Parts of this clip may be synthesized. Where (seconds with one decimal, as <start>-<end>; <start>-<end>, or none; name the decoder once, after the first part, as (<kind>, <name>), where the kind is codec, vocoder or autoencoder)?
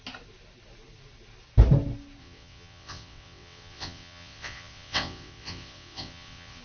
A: 2.2-6.6 (vocoder, WaveNeXt)